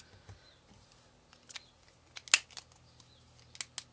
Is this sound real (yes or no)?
yes